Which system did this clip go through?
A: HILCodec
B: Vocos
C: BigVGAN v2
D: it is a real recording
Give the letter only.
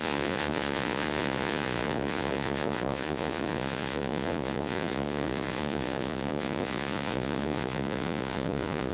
B